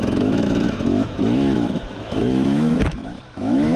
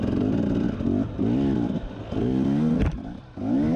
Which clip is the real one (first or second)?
second